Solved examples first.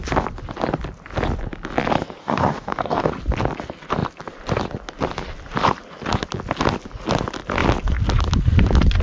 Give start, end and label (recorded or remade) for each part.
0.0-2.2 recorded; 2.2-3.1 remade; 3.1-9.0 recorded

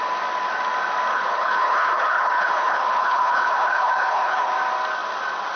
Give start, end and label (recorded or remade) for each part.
0.0-1.1 recorded; 1.1-4.5 remade; 4.5-5.6 recorded

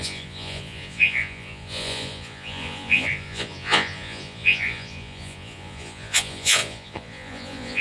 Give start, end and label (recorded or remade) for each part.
0.0-7.8 remade

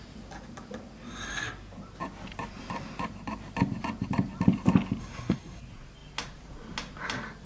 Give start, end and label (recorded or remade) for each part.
0.0-5.0 recorded; 5.0-5.6 remade; 5.6-7.5 recorded